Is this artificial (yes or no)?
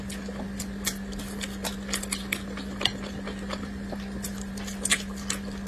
no